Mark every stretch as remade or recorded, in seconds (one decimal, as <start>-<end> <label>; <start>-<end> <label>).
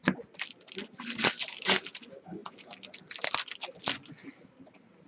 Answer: 0.0-2.0 recorded; 2.0-2.4 remade; 2.4-3.0 recorded; 3.0-4.0 remade; 4.0-4.6 recorded; 4.6-5.1 remade